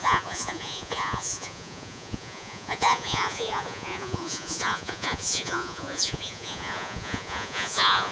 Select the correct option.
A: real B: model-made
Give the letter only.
B